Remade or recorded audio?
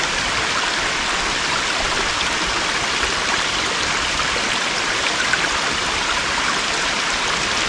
recorded